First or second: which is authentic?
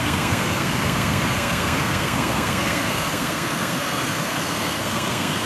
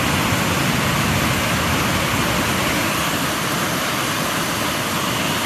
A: second